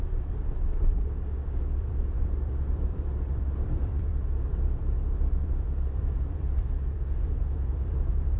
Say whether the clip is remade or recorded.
remade